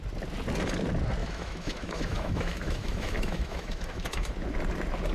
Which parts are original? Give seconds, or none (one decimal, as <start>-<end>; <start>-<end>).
0.0-1.2; 4.3-5.1